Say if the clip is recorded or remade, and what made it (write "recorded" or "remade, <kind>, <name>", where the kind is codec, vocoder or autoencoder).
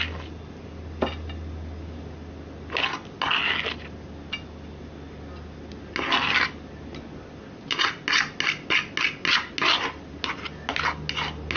recorded